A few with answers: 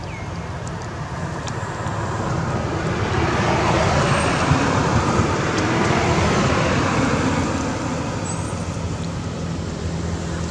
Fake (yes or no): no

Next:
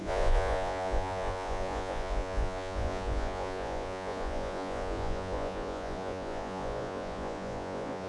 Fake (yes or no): yes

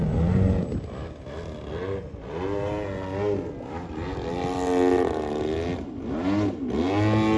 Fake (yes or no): no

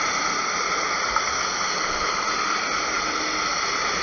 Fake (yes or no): no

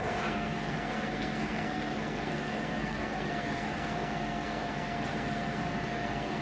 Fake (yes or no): yes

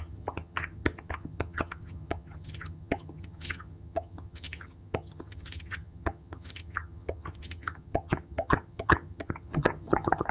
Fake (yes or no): yes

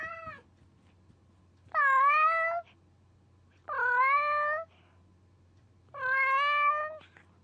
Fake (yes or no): no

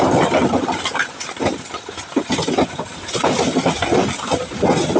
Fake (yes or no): no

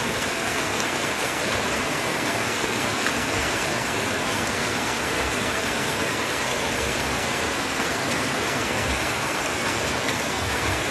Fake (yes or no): yes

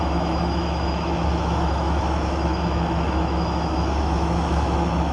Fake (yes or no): yes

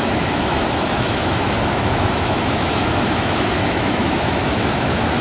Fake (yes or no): yes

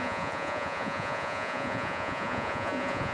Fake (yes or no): yes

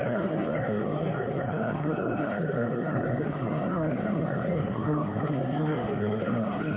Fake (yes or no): yes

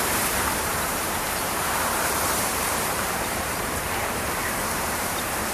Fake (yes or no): yes